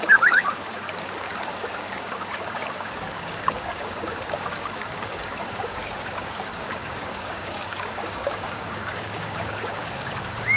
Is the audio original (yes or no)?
no